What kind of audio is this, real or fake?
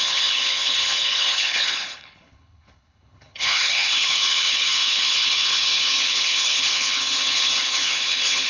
fake